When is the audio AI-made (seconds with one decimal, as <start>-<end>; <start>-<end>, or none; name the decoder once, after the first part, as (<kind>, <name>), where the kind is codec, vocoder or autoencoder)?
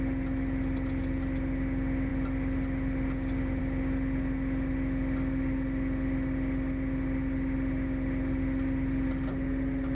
none